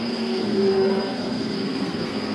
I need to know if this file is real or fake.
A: fake